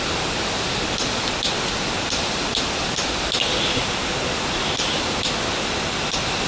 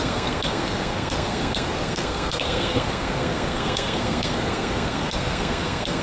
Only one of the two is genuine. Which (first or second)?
first